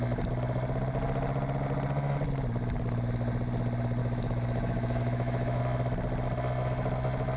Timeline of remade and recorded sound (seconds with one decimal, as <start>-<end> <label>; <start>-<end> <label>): 0.0-4.0 recorded; 4.0-5.6 remade; 5.6-7.4 recorded